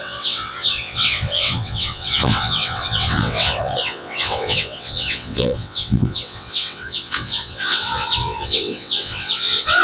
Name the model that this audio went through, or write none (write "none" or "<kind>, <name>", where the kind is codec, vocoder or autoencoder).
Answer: vocoder, WaveNeXt